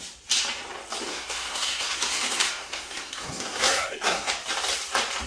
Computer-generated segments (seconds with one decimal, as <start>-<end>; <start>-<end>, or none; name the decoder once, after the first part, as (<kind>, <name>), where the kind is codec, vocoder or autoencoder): 1.1-4.3 (codec, SNAC)